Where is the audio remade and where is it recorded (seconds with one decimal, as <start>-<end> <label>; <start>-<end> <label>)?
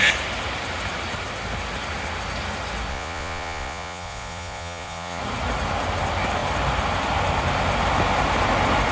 0.0-2.9 recorded; 2.9-5.2 remade; 5.2-8.9 recorded